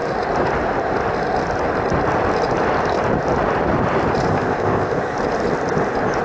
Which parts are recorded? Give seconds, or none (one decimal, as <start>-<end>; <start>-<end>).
0.0-4.3; 5.0-6.2